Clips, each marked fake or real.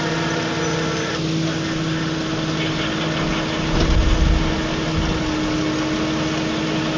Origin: real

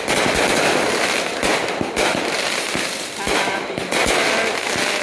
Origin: fake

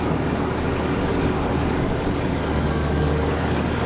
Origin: fake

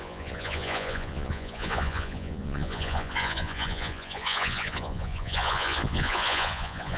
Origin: fake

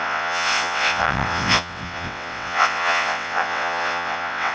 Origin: fake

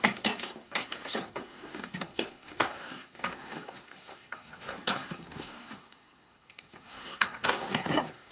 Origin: fake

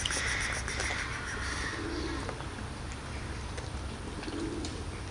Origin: real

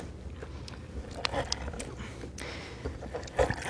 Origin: real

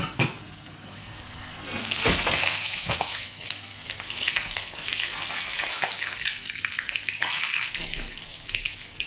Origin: fake